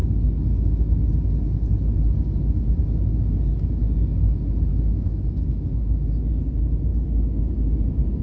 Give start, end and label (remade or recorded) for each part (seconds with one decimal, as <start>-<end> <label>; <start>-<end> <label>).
0.0-4.7 recorded; 4.7-6.3 remade; 6.3-6.9 recorded; 6.9-7.4 remade; 7.4-8.2 recorded